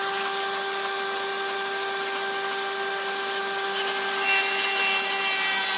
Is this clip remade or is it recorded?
recorded